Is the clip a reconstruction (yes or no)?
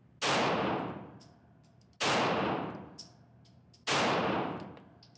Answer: no